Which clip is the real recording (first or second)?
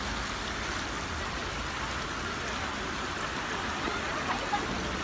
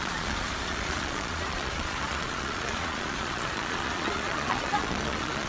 first